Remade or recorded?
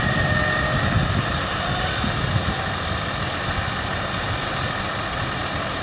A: recorded